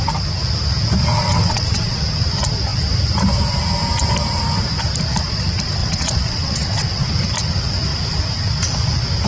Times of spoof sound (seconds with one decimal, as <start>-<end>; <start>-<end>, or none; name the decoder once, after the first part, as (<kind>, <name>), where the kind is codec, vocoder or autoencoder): 1.1-2.0 (vocoder, WaveNeXt); 5.8-7.1